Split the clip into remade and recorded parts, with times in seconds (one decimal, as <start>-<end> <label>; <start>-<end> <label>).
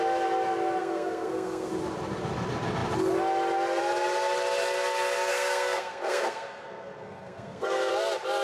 0.0-0.8 recorded; 0.8-1.7 remade; 1.7-5.3 recorded; 5.3-7.9 remade; 7.9-8.4 recorded